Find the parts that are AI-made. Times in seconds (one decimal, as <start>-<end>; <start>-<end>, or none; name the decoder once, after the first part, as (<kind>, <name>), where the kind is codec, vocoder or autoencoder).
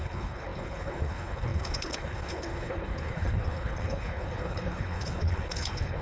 0.0-6.0 (codec, HILCodec)